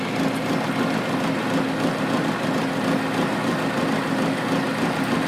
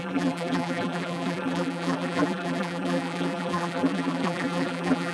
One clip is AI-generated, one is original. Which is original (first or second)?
first